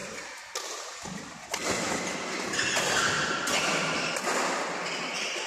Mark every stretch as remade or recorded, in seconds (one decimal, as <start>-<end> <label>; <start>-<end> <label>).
0.0-5.5 recorded